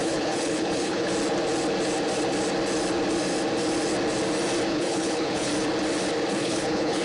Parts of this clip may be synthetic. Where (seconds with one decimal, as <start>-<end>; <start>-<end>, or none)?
0.0-1.1; 4.7-5.5; 6.3-7.0